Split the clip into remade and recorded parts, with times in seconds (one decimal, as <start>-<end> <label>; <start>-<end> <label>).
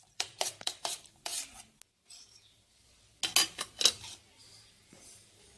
0.0-1.3 remade; 1.3-2.5 recorded; 2.5-3.1 remade; 3.1-4.7 recorded; 4.7-5.6 remade